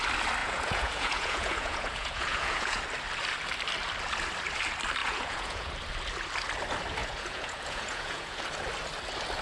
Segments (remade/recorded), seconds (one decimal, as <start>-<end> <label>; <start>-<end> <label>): 0.0-0.4 recorded; 0.4-2.8 remade; 2.8-5.0 recorded; 5.0-5.7 remade; 5.7-7.0 recorded; 7.0-8.4 remade; 8.4-9.4 recorded